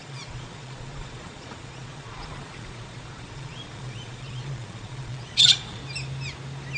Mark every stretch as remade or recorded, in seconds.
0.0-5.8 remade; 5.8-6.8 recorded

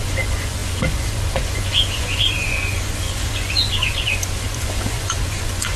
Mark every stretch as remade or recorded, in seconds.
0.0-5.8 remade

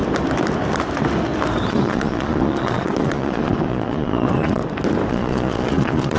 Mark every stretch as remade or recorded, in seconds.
0.0-1.7 recorded; 1.7-4.6 remade; 4.6-5.1 recorded; 5.1-6.2 remade

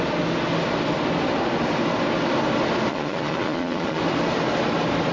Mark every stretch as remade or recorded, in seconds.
0.0-2.9 recorded; 2.9-4.0 remade; 4.0-5.1 recorded

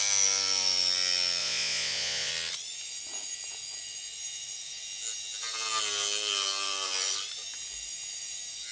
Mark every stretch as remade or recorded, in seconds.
0.0-1.4 recorded; 1.4-2.3 remade; 2.3-8.7 recorded